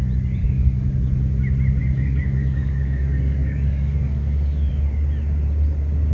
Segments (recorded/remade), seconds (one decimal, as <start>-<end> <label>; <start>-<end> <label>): 0.0-0.4 recorded; 0.4-0.9 remade; 0.9-1.8 recorded; 1.8-4.7 remade; 4.7-6.1 recorded